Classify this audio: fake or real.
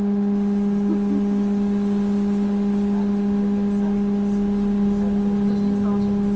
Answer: real